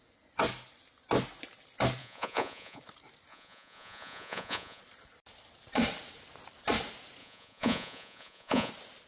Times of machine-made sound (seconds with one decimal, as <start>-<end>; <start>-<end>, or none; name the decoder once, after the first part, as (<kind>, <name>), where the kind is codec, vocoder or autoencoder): 2.0-2.8 (vocoder, Vocos); 3.3-4.8; 7.2-8.7